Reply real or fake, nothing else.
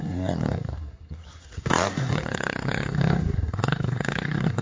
fake